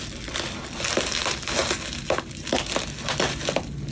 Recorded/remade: recorded